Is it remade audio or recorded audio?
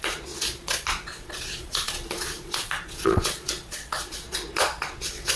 remade